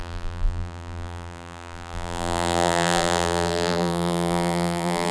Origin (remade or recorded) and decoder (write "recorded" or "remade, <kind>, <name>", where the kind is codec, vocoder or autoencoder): remade, vocoder, BigVGAN v2